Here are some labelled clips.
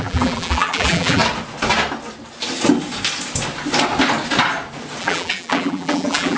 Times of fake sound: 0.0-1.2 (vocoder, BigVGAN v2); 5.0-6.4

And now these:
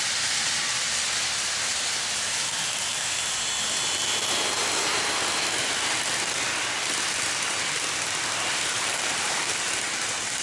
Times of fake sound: 8.7-9.4 (vocoder, BigVGAN v2)

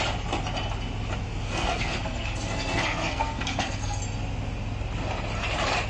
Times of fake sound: 1.3-4.0 (codec, SNAC)

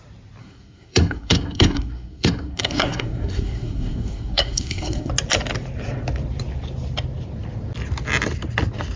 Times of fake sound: 0.4-5.1 (codec, SNAC)

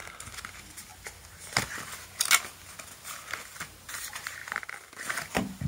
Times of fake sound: 0.5-0.9 (vocoder, BigVGAN v2); 3.9-4.4; 5.3-5.7

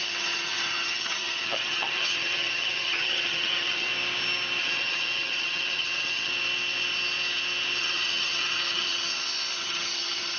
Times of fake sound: 0.0-3.9 (vocoder, HiFi-GAN); 4.6-6.3; 7.8-9.1; 9.6-10.4